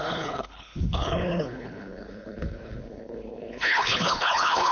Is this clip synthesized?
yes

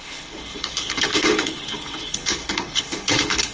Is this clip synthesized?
yes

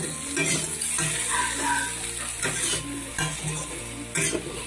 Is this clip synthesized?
no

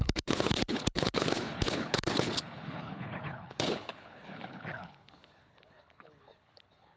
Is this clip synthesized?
yes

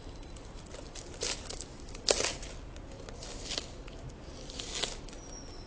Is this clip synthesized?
no